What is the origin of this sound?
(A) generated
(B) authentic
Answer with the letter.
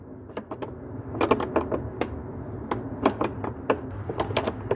B